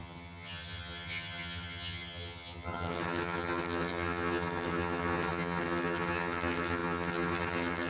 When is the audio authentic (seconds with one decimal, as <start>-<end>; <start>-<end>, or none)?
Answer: none